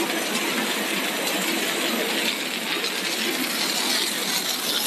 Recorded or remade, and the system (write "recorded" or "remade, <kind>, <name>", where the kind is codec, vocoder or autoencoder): recorded